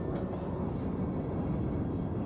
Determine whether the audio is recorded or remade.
recorded